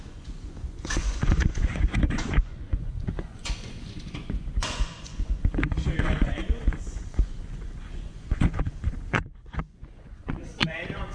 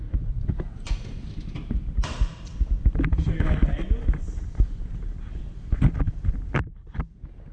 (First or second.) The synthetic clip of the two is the first